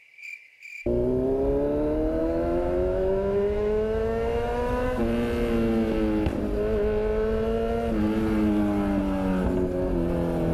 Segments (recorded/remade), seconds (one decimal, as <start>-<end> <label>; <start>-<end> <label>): 0.0-2.2 recorded; 2.2-5.0 remade; 5.0-10.5 recorded